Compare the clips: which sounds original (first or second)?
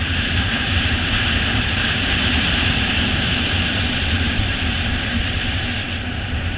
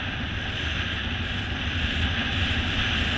second